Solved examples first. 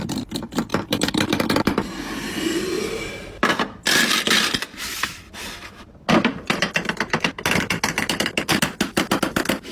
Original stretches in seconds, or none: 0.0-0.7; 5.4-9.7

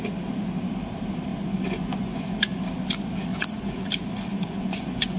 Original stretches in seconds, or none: 0.0-1.3; 2.6-3.3; 3.9-4.3

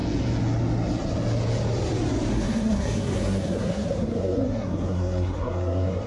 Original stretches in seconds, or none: 0.0-2.3

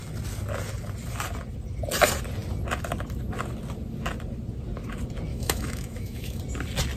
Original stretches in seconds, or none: 0.0-5.3; 6.4-7.0

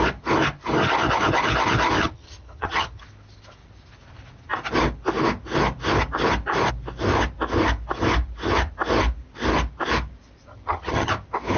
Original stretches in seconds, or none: 0.0-2.0; 3.0-10.5; 11.1-11.6

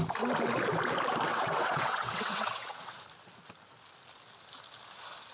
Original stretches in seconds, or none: 0.0-1.3; 3.0-5.3